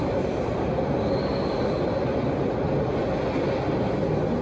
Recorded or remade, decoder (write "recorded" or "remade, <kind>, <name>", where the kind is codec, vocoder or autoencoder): recorded